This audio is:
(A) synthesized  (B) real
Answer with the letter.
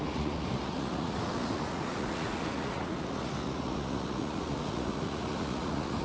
A